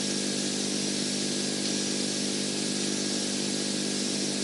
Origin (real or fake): real